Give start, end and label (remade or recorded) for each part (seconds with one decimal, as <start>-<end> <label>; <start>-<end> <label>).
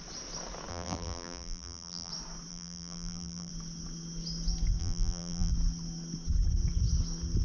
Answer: 0.0-0.7 recorded; 0.7-2.1 remade; 2.1-2.5 recorded; 2.5-3.5 remade; 3.5-4.8 recorded; 4.8-5.5 remade; 5.5-7.4 recorded